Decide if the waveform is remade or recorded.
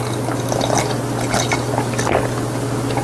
recorded